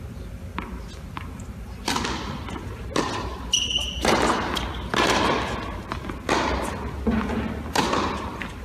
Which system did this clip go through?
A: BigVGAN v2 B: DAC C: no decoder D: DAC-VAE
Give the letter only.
C